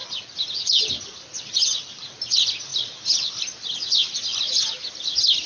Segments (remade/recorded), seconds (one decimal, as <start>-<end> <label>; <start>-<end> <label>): 0.0-5.5 recorded

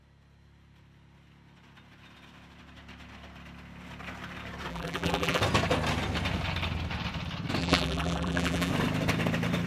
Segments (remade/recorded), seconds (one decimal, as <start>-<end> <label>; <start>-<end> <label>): 0.0-4.7 recorded; 4.7-5.4 remade; 5.4-7.6 recorded; 7.6-8.7 remade; 8.7-9.7 recorded